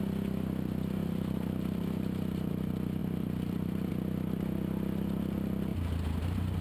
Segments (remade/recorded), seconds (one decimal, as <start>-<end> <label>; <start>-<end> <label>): 0.0-1.0 recorded; 1.0-2.5 remade; 2.5-3.0 recorded; 3.0-3.9 remade; 3.9-6.6 recorded